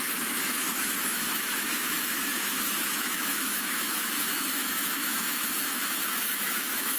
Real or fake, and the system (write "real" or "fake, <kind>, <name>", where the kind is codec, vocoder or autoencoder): fake, autoencoder, DAC-VAE